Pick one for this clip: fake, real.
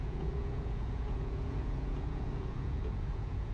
fake